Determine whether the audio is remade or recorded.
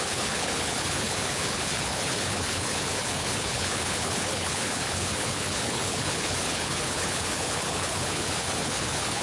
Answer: remade